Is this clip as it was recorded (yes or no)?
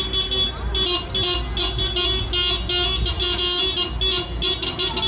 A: yes